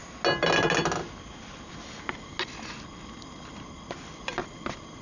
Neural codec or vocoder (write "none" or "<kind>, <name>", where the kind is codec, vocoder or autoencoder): none